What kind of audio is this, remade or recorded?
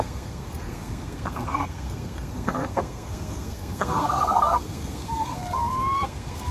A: remade